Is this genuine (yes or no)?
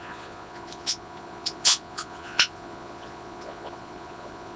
no